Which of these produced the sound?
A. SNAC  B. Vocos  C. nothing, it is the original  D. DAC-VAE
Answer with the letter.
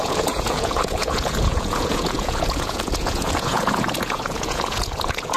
B